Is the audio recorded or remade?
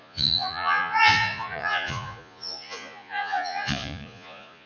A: remade